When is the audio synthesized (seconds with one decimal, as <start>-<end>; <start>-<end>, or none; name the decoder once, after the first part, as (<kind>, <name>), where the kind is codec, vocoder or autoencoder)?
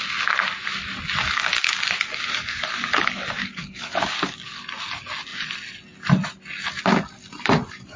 1.2-4.6 (codec, DAC)